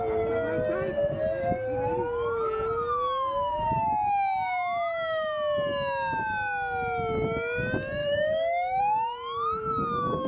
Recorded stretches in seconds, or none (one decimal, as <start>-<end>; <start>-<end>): 0.0-8.0; 8.8-10.3